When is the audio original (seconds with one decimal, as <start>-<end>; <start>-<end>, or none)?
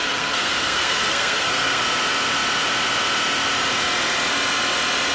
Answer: 1.8-5.1